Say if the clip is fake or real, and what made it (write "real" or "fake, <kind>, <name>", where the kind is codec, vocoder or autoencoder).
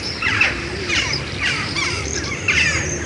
fake, vocoder, BigVGAN v2